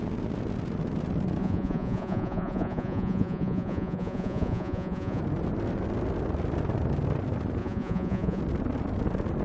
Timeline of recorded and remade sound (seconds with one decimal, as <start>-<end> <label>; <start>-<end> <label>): 0.0-1.4 recorded; 1.4-5.2 remade; 5.2-7.6 recorded; 7.6-8.4 remade; 8.4-9.4 recorded